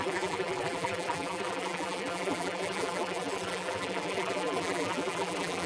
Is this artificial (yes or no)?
yes